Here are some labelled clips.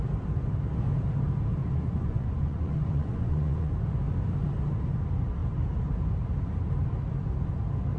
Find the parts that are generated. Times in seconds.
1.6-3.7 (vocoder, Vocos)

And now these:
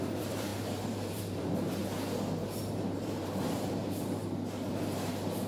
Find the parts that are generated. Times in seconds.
0.0-1.8 (vocoder, BigVGAN v2); 2.6-4.2

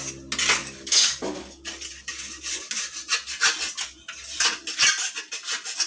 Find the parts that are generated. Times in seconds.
0.6-1.7 (codec, DAC)

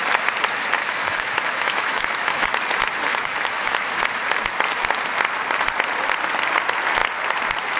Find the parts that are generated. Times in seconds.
0.8-2.5 (autoencoder, DAC-VAE); 3.1-4.0